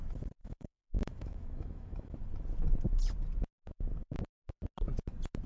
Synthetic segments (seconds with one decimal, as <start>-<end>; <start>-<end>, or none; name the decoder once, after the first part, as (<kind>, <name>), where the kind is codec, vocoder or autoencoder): 0.4-2.2 (autoencoder, DAC-VAE)